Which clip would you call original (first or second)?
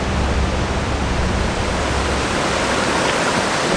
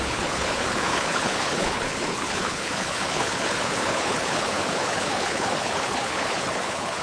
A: first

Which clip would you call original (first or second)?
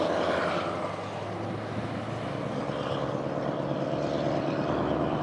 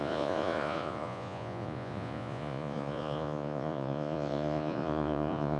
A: first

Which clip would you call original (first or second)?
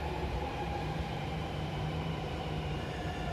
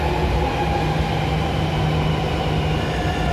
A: second